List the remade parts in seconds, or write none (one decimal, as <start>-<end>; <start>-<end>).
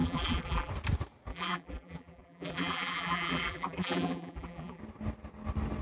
0.0-0.7; 1.3-4.8